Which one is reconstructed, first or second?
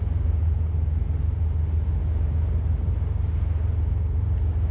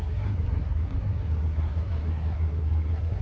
second